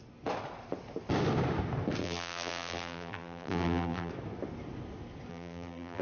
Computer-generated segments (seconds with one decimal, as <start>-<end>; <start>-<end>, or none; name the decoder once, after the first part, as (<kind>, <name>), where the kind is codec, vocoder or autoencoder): 2.0-4.1 (vocoder, BigVGAN v2); 5.3-6.0